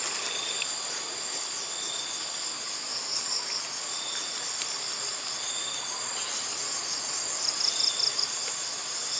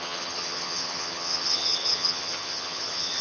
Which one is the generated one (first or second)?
second